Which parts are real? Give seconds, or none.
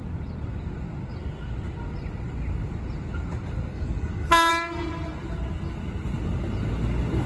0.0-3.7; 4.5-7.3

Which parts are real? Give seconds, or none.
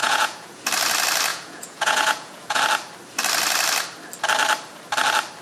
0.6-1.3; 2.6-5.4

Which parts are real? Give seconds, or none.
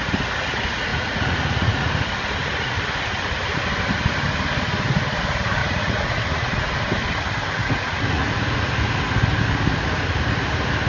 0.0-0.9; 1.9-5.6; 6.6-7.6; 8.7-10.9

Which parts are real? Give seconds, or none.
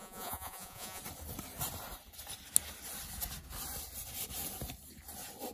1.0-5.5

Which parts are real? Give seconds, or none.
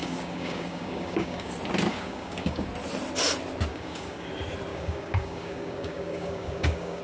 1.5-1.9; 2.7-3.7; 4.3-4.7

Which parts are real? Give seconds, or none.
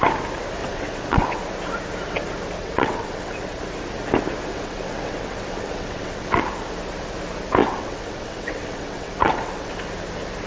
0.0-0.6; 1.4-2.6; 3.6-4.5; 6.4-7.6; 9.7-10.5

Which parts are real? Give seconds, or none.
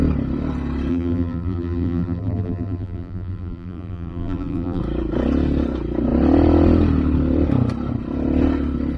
0.0-0.9; 4.8-9.0